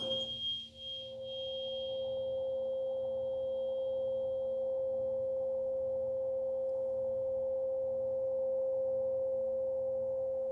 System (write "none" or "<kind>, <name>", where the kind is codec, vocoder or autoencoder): none